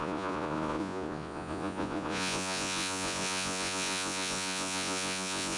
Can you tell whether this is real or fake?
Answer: fake